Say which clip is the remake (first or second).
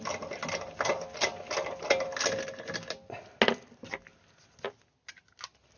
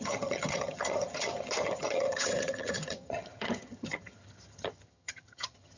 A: second